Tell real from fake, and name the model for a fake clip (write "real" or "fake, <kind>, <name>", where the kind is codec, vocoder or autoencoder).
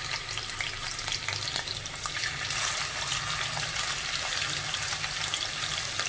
real